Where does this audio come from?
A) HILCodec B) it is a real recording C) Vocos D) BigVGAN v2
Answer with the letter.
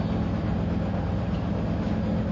B